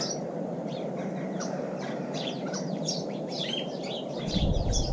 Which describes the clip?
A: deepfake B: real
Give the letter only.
A